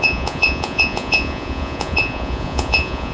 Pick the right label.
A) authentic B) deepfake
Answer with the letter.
B